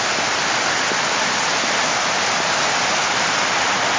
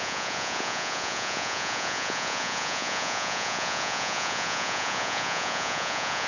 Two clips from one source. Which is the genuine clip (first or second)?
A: first